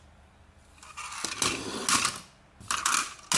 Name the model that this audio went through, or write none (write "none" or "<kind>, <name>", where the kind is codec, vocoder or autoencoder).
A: none